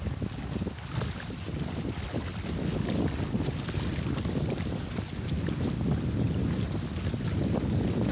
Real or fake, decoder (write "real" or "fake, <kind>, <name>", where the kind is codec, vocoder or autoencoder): real